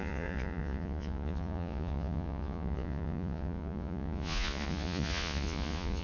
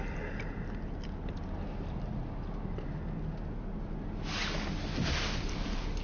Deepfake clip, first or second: first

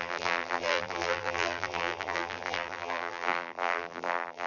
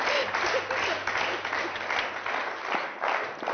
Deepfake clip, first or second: first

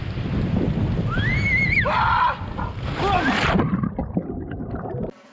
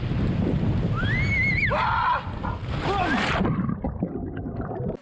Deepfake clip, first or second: first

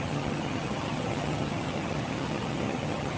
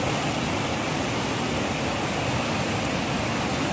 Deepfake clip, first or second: first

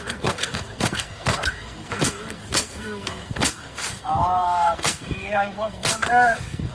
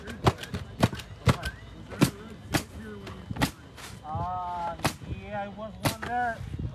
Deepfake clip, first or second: first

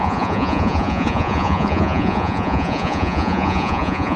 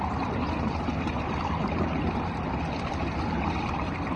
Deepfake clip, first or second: first